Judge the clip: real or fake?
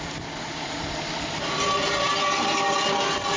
real